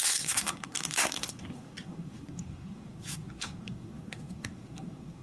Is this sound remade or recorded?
remade